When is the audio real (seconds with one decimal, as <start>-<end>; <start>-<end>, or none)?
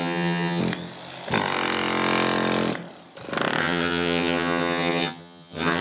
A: 0.6-3.6